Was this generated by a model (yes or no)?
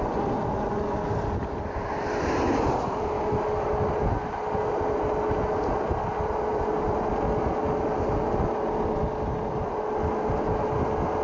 no